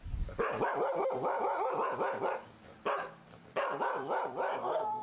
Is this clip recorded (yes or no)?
no